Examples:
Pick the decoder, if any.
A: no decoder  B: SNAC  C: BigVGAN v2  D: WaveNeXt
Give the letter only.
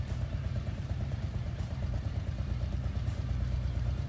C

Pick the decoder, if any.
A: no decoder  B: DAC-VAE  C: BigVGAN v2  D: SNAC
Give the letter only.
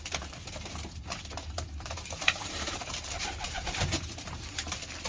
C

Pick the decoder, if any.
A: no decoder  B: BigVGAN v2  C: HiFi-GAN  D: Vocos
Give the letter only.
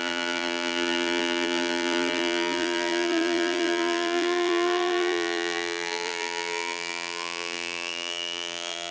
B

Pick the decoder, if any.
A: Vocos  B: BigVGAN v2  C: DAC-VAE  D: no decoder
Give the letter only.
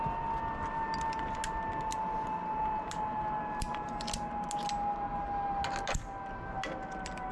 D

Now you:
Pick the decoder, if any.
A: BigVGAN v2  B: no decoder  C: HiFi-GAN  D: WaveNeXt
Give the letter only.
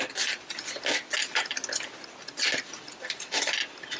B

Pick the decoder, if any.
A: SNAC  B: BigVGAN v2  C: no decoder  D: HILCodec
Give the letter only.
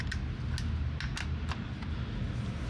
C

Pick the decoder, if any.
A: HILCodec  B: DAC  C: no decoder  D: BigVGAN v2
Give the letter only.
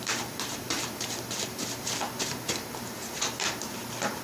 D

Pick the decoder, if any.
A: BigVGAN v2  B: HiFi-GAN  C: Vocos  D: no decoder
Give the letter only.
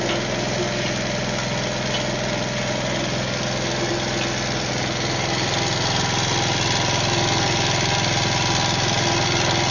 D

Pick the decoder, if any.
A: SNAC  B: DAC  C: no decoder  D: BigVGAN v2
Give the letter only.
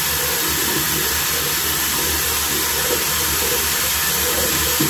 C